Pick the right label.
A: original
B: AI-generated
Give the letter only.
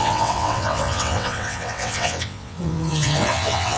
B